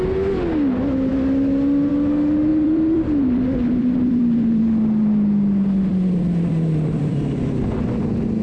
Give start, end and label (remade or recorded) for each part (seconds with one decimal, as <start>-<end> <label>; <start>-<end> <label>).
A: 0.0-2.5 recorded; 2.5-4.6 remade; 4.6-5.9 recorded; 5.9-7.5 remade; 7.5-8.4 recorded